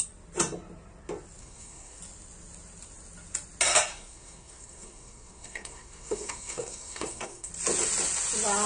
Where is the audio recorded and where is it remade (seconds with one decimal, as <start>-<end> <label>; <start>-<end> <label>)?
0.0-1.4 recorded; 1.4-2.0 remade; 2.0-3.9 recorded; 3.9-7.5 remade; 7.5-8.7 recorded

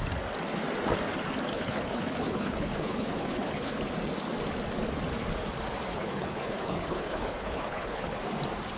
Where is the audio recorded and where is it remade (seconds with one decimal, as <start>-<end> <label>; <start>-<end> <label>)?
0.0-1.5 recorded; 1.5-3.8 remade; 3.8-5.9 recorded; 5.9-8.2 remade; 8.2-8.8 recorded

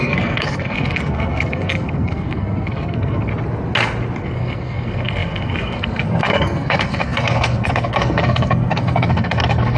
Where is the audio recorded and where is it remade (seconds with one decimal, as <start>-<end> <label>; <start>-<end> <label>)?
0.0-3.3 remade; 3.3-4.2 recorded; 4.2-9.8 remade

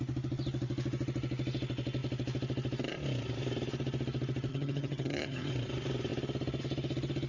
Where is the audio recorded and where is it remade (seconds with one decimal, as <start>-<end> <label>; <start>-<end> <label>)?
0.0-4.5 recorded; 4.5-5.5 remade; 5.5-7.3 recorded

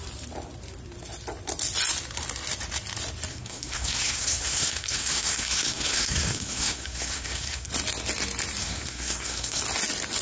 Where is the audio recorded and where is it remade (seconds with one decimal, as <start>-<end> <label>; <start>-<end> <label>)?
0.0-3.3 recorded; 3.3-7.7 remade; 7.7-8.6 recorded; 8.6-9.6 remade; 9.6-10.2 recorded